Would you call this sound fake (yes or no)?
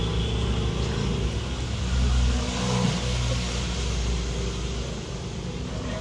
no